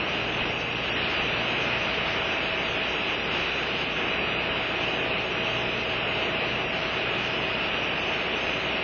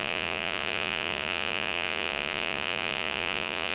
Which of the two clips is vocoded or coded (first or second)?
second